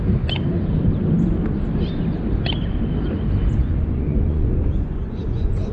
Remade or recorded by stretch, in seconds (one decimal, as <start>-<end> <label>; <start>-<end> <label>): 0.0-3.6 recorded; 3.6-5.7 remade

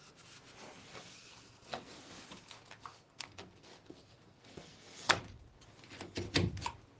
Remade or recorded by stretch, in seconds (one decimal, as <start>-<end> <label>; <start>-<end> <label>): 0.0-0.8 recorded; 0.8-2.1 remade; 2.1-2.9 recorded; 2.9-5.2 remade; 5.2-7.0 recorded

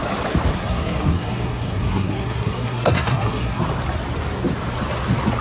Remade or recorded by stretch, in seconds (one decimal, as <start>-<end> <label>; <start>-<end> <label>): 0.0-0.5 recorded; 0.5-3.6 remade; 3.6-5.4 recorded

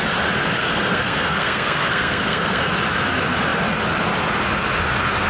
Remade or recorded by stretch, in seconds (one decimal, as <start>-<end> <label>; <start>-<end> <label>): 0.0-0.6 recorded; 0.6-2.6 remade; 2.6-5.3 recorded